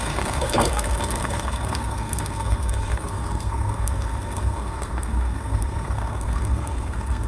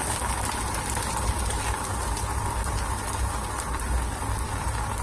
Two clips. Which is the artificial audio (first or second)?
first